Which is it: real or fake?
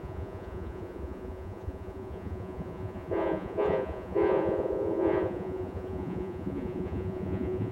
fake